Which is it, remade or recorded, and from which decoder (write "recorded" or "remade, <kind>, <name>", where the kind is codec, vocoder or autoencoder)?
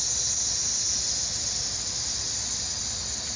recorded